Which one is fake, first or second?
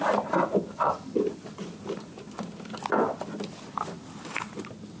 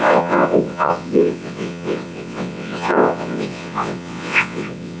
second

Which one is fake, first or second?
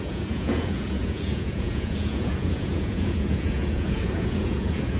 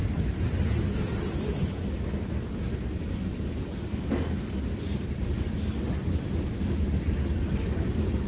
first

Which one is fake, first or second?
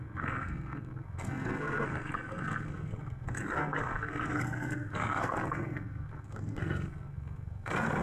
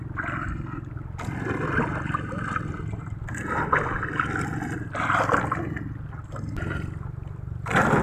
first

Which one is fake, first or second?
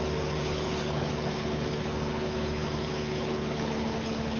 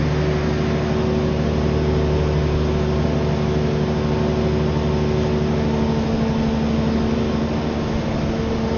first